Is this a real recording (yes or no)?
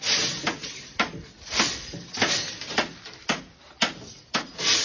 yes